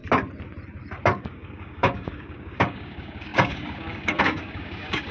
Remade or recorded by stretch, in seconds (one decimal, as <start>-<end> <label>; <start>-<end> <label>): 0.0-1.2 recorded; 1.2-5.1 remade